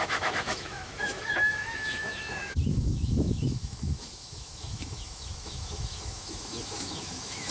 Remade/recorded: remade